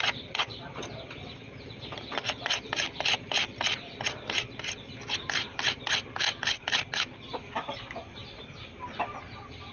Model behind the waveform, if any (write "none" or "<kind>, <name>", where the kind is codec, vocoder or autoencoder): vocoder, BigVGAN v2